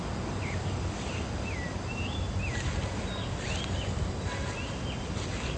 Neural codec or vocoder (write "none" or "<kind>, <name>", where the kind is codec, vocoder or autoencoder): none